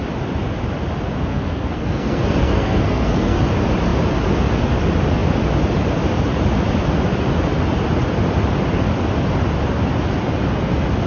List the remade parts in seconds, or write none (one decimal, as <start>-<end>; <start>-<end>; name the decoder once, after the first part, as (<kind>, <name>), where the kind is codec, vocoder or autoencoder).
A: 1.3-3.4 (codec, SNAC)